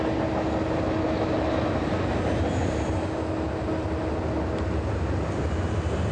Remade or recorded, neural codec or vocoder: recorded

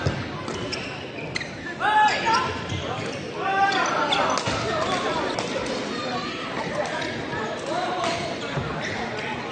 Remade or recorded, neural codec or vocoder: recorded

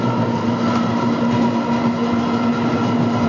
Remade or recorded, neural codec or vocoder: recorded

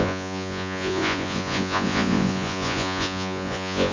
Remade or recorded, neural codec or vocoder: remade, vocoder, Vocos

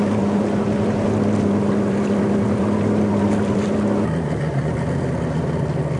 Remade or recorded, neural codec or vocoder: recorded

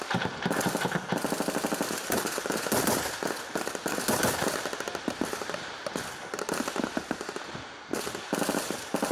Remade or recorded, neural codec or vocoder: recorded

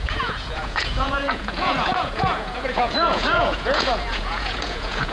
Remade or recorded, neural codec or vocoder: remade, vocoder, Vocos